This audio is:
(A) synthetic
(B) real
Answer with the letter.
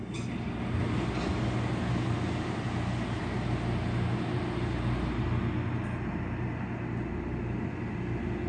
B